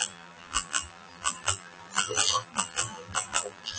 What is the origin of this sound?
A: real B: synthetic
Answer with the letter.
B